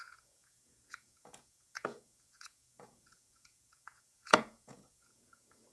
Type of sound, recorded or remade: remade